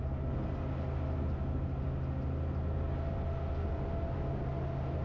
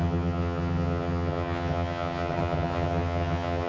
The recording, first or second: first